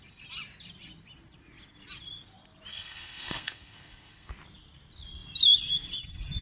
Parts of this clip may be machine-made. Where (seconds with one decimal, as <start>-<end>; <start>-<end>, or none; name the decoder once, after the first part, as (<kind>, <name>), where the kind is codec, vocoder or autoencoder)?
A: 2.7-4.3 (codec, SNAC)